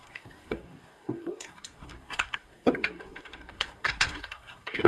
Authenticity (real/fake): fake